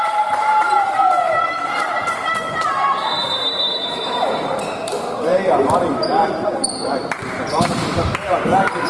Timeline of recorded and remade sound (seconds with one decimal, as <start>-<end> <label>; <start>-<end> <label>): 0.0-2.2 remade; 2.2-3.4 recorded; 3.4-8.9 remade